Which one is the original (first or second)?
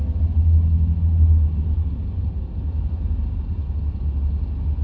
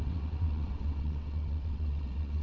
first